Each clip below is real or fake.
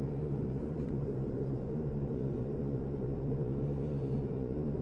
fake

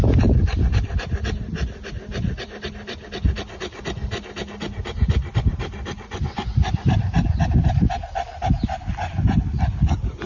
real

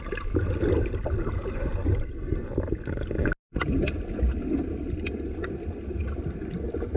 real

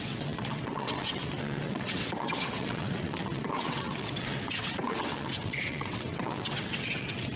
fake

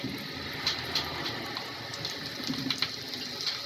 real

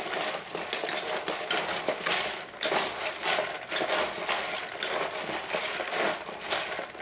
real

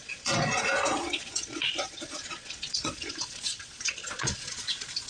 fake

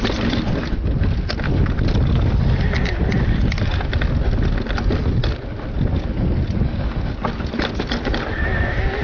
real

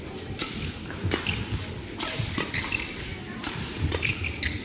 real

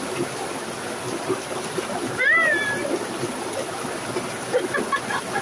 real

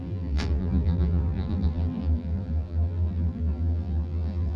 fake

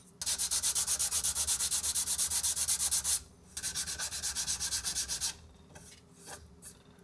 real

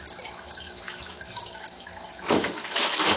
fake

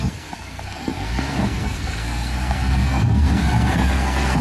fake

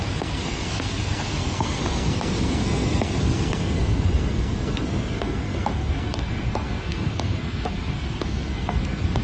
fake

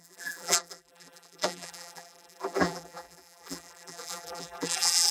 fake